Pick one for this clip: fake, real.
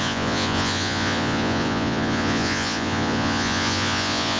fake